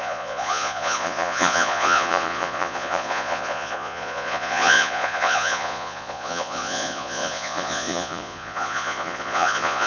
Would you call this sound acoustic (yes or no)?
no